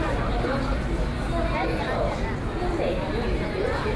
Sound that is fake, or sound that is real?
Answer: real